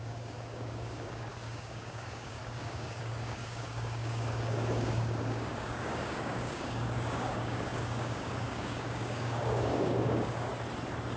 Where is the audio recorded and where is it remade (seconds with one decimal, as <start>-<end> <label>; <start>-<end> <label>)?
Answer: 0.0-10.5 remade; 10.5-11.2 recorded